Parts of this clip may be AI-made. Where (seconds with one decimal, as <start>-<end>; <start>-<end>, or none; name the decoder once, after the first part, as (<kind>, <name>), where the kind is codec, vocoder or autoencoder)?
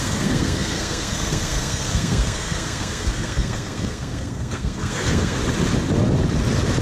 0.0-5.4 (codec, SNAC)